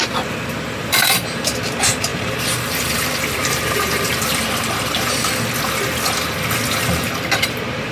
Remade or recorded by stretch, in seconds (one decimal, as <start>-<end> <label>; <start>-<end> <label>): 0.0-5.1 remade; 5.1-6.8 recorded; 6.8-7.9 remade